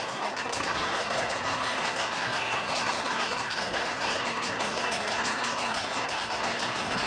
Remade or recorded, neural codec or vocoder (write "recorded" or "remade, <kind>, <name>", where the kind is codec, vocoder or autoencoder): remade, codec, SNAC